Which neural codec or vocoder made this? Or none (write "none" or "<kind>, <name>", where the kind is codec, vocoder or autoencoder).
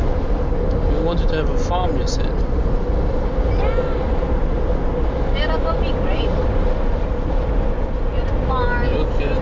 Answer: none